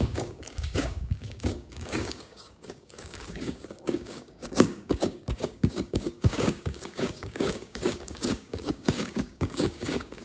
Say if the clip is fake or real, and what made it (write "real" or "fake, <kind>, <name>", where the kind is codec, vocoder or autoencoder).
fake, codec, DAC